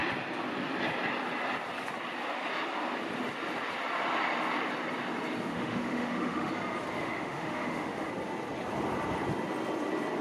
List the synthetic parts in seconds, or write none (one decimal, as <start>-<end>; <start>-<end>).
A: 5.5-6.5; 7.0-8.1